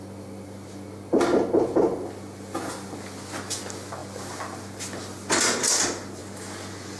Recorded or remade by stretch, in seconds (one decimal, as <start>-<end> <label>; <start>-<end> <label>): 0.0-7.0 recorded